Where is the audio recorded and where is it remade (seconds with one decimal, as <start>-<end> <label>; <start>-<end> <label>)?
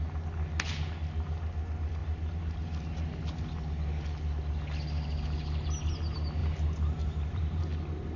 0.0-6.4 recorded; 6.4-7.6 remade; 7.6-8.2 recorded